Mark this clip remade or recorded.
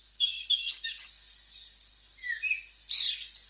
recorded